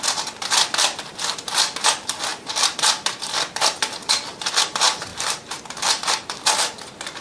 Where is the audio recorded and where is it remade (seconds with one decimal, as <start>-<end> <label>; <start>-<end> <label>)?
0.0-5.1 recorded; 5.1-6.4 remade; 6.4-7.2 recorded